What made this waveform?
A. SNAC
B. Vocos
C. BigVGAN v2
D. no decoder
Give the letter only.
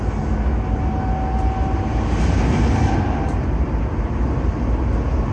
D